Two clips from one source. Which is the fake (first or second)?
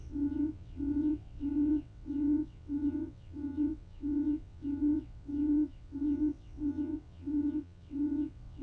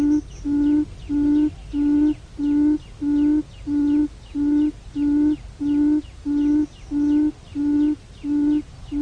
first